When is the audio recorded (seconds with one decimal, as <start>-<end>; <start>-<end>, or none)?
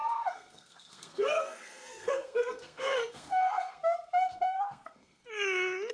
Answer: 5.2-5.9